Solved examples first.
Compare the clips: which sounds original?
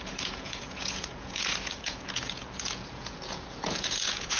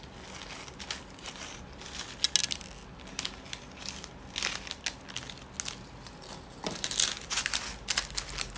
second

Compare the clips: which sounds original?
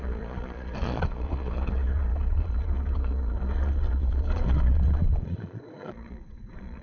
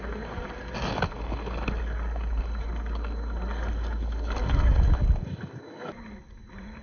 second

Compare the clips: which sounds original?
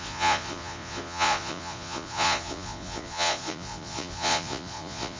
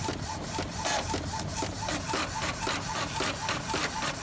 second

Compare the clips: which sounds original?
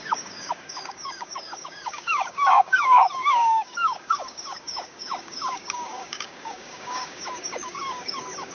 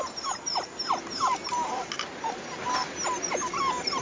second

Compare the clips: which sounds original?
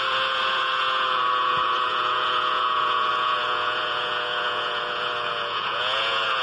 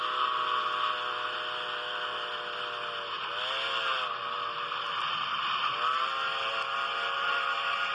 second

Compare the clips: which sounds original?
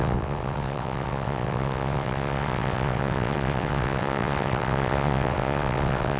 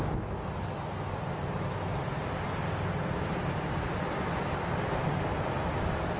second